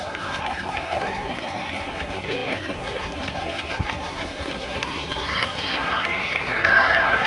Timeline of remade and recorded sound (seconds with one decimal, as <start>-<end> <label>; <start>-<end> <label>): 0.0-7.3 remade